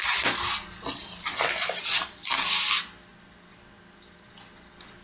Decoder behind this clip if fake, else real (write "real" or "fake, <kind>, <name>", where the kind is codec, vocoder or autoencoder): real